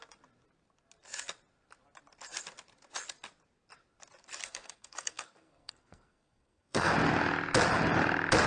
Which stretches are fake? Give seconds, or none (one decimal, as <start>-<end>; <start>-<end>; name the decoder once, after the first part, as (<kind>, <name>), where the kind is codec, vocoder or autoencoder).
4.4-6.9 (codec, SNAC)